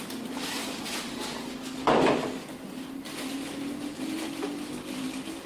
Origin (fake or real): fake